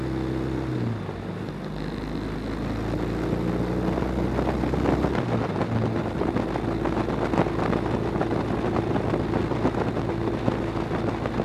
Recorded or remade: recorded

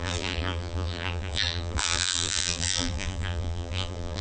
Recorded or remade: remade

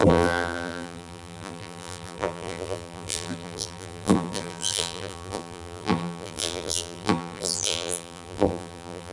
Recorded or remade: remade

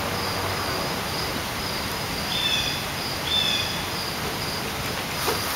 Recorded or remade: recorded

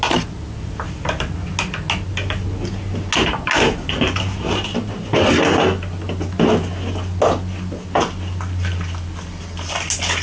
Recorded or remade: recorded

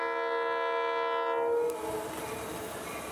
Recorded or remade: recorded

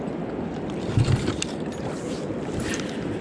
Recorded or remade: recorded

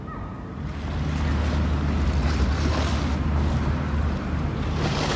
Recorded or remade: recorded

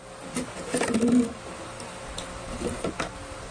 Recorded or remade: recorded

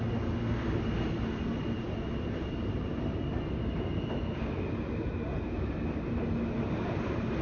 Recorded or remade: recorded